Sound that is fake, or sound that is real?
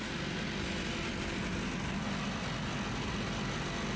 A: real